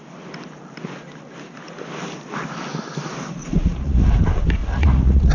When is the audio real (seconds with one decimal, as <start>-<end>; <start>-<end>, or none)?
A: 0.0-3.4; 4.0-4.6